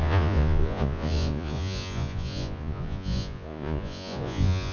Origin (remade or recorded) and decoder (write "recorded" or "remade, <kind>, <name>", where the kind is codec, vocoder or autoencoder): remade, vocoder, Vocos